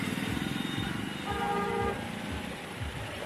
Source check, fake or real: real